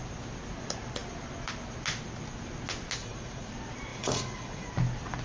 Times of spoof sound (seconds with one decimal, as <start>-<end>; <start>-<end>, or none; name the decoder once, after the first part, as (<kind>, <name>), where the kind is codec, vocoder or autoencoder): 3.0-3.5 (vocoder, Vocos); 3.9-4.7